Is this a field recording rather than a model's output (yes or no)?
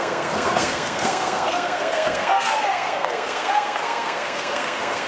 no